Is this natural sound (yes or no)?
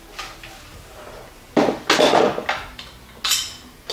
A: yes